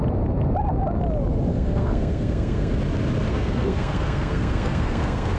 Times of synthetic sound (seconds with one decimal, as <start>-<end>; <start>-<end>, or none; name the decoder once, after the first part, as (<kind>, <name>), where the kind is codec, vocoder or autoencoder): 1.5-2.8 (codec, SNAC); 3.3-5.4